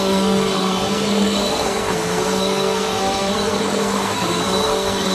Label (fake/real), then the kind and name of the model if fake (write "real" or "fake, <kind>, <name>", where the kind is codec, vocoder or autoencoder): fake, codec, SNAC